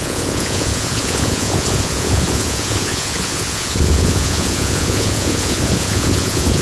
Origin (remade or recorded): remade